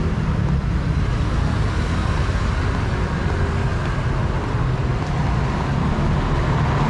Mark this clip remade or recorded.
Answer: recorded